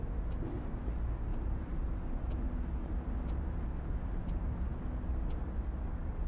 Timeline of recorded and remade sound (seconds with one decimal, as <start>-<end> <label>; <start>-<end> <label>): 0.0-1.3 recorded; 1.3-1.9 remade; 1.9-6.3 recorded